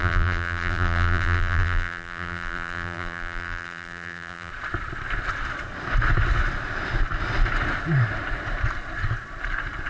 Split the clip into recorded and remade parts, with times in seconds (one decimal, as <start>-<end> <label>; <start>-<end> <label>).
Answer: 0.0-4.5 remade; 4.5-9.9 recorded